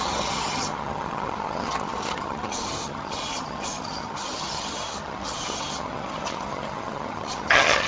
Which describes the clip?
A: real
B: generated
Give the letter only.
B